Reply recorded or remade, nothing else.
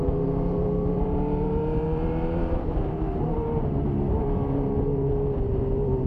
remade